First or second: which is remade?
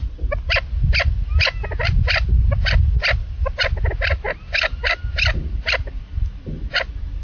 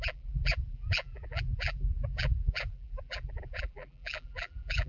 second